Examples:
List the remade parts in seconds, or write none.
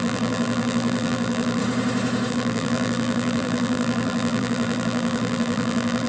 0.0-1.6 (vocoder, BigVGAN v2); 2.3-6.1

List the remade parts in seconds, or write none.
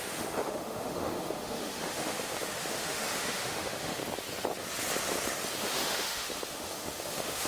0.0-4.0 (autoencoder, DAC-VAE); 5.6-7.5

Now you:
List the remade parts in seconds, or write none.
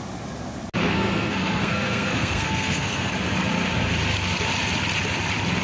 0.8-3.1 (codec, SNAC)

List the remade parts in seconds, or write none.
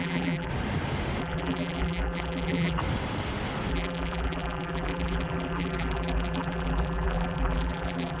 0.0-0.5 (vocoder, BigVGAN v2); 1.2-2.8; 3.7-8.2